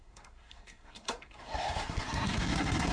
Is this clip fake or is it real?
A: fake